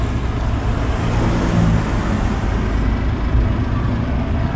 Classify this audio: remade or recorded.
recorded